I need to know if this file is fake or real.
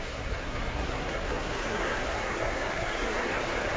fake